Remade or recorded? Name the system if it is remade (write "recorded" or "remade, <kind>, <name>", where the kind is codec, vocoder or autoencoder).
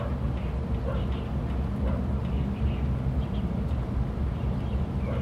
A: recorded